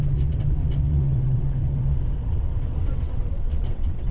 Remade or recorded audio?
remade